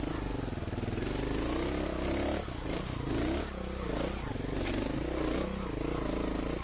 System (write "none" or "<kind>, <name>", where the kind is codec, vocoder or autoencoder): none